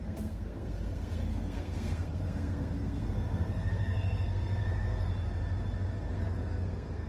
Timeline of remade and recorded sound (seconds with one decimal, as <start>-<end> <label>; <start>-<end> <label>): 0.0-5.1 remade; 5.1-6.1 recorded; 6.1-7.1 remade